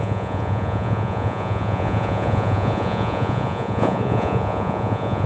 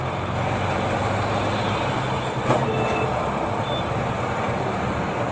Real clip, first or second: second